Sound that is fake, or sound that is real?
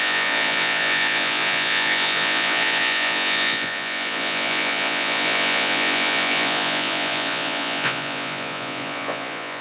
fake